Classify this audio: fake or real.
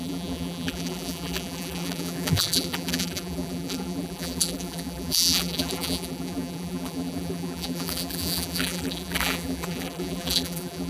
fake